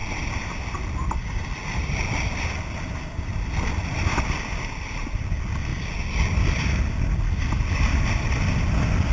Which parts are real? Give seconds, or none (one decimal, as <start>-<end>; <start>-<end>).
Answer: 0.0-9.1